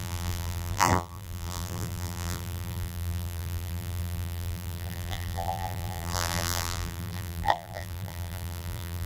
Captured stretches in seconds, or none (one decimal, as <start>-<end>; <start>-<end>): none

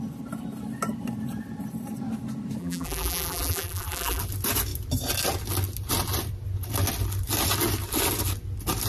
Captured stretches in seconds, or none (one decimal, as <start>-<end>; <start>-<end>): 0.0-2.6; 4.2-8.9

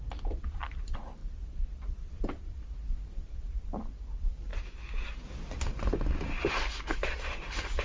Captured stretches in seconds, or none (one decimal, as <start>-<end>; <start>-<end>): 4.5-7.0

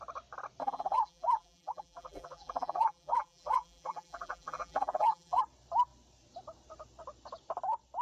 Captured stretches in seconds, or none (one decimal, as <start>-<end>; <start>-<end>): 0.0-0.6; 5.4-8.0

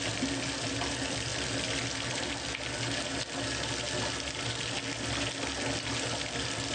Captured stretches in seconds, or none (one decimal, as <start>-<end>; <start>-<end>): 0.0-6.7

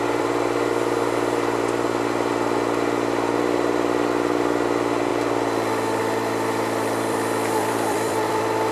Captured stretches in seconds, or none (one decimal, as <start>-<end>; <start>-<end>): 5.1-6.0

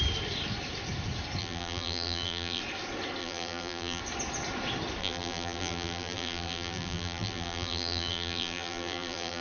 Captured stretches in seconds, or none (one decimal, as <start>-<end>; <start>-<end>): 0.0-1.4; 2.6-3.2; 4.0-5.0

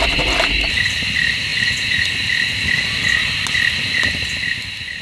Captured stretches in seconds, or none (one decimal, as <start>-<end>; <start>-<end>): 0.0-5.0